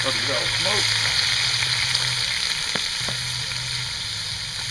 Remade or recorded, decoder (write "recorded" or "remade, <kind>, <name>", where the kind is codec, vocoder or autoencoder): recorded